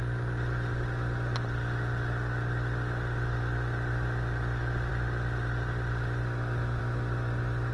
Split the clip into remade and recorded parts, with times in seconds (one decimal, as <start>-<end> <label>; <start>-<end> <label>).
0.0-7.7 recorded